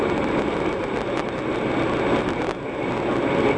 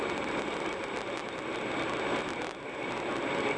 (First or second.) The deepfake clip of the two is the second